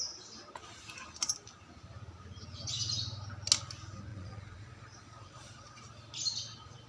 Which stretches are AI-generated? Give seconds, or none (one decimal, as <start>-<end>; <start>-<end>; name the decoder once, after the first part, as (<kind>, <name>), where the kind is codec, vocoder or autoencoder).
4.1-5.8 (vocoder, Vocos)